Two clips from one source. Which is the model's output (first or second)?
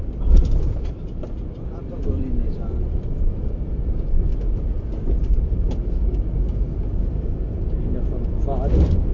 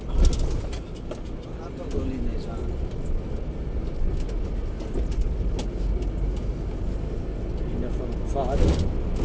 first